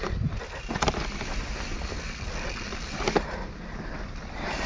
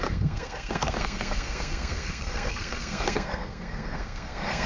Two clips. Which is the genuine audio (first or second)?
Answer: first